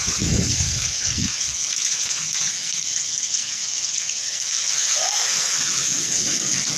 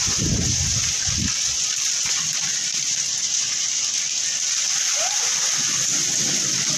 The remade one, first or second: first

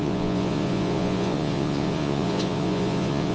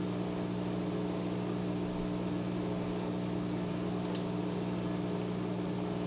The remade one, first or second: first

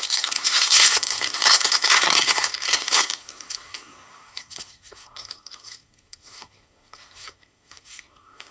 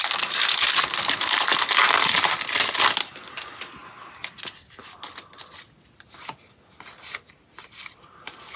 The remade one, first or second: first